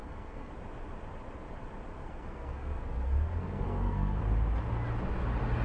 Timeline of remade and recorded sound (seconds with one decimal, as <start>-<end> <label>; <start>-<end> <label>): 0.0-0.5 remade; 0.5-2.0 recorded; 2.0-4.2 remade; 4.2-5.6 recorded